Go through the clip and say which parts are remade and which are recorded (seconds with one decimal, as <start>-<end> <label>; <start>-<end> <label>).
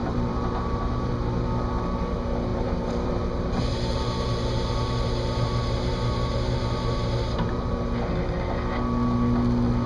0.0-1.1 remade; 1.1-2.5 recorded; 2.5-7.7 remade; 7.7-9.9 recorded